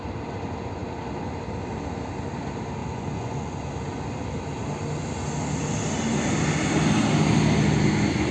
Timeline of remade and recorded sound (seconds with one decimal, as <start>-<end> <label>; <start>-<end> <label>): 0.0-2.8 recorded; 2.8-3.7 remade; 3.7-8.3 recorded